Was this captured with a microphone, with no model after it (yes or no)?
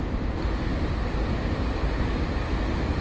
yes